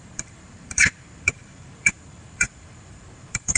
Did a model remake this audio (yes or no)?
yes